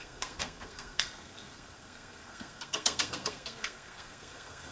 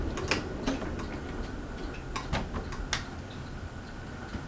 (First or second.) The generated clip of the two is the first